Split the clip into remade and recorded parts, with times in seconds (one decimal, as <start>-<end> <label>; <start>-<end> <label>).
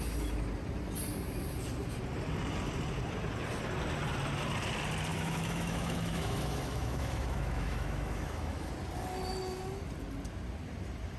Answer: 0.0-5.1 recorded; 5.1-8.7 remade; 8.7-11.2 recorded